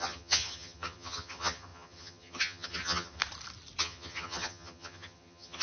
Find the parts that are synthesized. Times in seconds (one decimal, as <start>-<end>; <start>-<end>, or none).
0.0-3.2; 3.8-5.6